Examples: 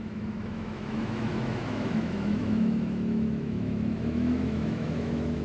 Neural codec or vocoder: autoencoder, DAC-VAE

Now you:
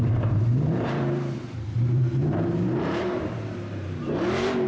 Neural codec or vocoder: vocoder, BigVGAN v2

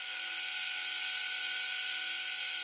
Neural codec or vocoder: none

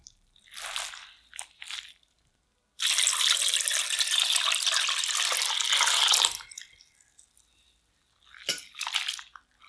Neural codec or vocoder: none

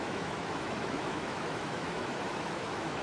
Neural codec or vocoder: autoencoder, DAC-VAE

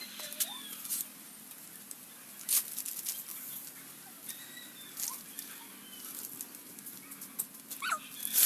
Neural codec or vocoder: none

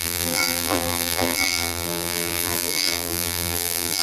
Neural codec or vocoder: vocoder, BigVGAN v2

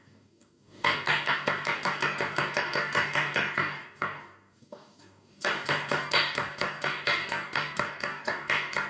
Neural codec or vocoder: codec, DAC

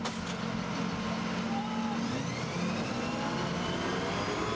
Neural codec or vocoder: none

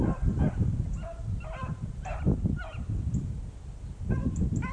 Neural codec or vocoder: vocoder, BigVGAN v2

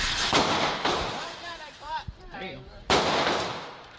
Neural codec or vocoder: vocoder, BigVGAN v2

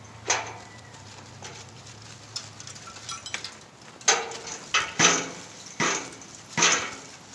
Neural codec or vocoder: none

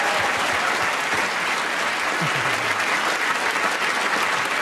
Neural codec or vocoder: none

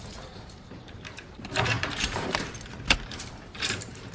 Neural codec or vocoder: vocoder, BigVGAN v2